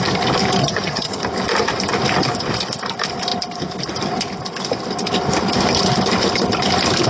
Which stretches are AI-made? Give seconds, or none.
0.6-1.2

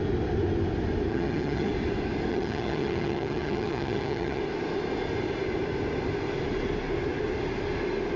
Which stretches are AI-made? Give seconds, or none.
1.1-1.7; 2.3-4.4

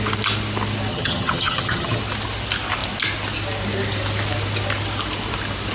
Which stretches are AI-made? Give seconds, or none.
0.9-2.0

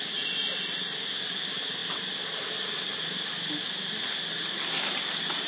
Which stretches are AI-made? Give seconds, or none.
none

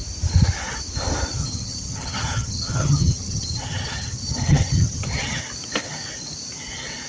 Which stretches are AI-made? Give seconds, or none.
1.4-5.4